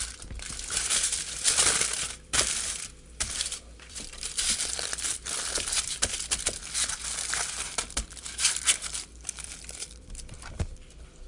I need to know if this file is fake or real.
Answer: fake